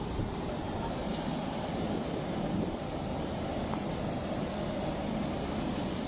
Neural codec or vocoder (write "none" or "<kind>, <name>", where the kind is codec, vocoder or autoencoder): vocoder, BigVGAN v2